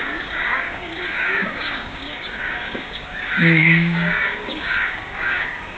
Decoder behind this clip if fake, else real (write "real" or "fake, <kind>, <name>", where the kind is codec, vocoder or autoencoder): fake, codec, DAC